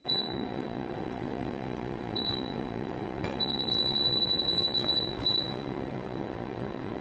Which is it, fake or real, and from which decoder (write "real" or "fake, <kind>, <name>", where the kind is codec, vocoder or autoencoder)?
fake, vocoder, WaveNeXt